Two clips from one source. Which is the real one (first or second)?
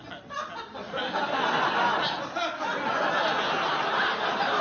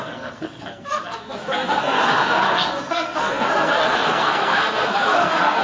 first